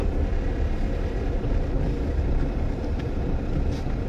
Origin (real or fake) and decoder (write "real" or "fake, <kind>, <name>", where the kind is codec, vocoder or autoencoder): real